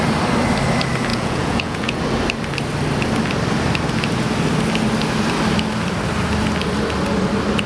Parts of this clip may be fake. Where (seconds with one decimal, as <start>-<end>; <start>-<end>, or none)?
1.1-2.0